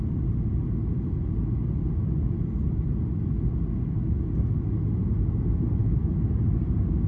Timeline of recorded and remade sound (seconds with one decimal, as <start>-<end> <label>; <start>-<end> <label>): 0.0-5.8 recorded; 5.8-6.4 remade; 6.4-7.1 recorded